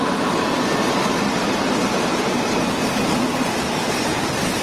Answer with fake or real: fake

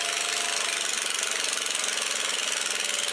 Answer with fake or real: real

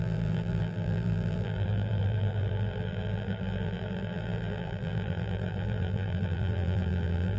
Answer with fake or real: fake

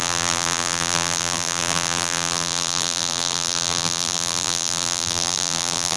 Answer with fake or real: fake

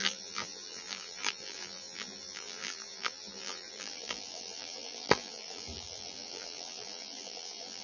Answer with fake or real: fake